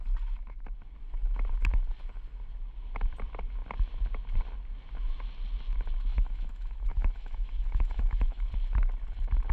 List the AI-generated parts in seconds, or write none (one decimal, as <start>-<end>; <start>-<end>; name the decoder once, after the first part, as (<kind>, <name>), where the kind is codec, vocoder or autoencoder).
6.1-8.5 (autoencoder, DAC-VAE)